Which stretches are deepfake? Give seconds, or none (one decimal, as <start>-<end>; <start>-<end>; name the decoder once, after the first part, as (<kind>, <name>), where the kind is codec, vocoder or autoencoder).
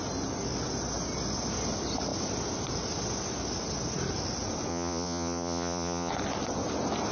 4.7-6.1 (vocoder, Vocos)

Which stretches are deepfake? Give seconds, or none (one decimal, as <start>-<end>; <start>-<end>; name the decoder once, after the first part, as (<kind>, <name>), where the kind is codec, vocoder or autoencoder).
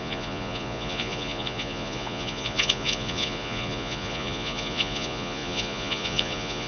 0.0-6.7 (vocoder, Vocos)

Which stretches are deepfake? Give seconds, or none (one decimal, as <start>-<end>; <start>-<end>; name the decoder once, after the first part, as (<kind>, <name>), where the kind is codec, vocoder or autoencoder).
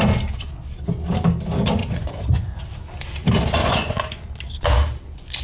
1.8-2.6 (vocoder, Vocos); 3.6-4.2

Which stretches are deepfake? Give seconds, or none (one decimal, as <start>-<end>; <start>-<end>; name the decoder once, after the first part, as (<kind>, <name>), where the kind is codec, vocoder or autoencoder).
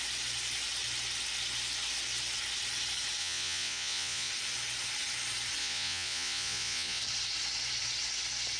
3.2-4.3 (vocoder, Vocos); 5.6-7.0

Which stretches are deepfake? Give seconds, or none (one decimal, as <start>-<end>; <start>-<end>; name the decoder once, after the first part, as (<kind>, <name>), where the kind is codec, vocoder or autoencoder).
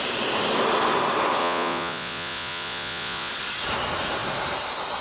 1.4-3.3 (vocoder, Vocos)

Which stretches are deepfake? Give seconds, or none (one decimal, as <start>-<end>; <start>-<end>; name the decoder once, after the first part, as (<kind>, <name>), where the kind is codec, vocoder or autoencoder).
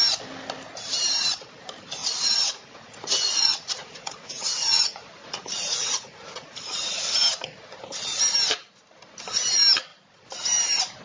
2.0-7.0 (vocoder, Vocos)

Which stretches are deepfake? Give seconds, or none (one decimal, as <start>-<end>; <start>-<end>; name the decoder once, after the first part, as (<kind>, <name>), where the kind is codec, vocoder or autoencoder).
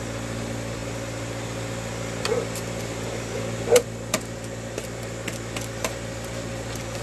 none